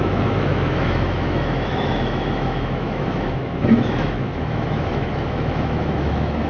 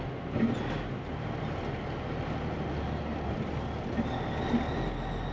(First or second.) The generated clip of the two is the first